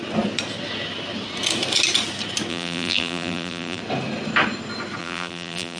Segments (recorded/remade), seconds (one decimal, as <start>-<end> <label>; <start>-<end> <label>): 0.0-2.5 recorded; 2.5-3.8 remade; 3.8-5.0 recorded; 5.0-5.8 remade